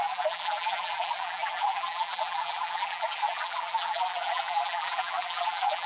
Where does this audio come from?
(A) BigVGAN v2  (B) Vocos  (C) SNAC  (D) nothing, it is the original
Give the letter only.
A